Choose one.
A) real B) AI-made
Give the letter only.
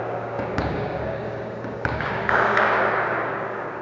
B